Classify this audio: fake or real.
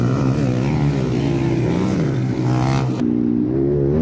real